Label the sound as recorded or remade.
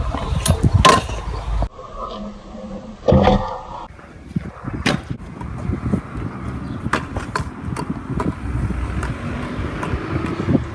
recorded